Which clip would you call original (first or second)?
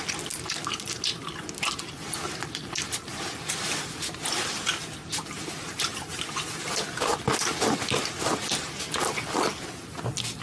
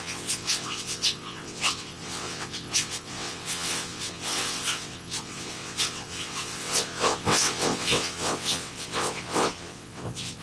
first